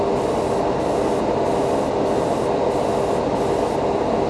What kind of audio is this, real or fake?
real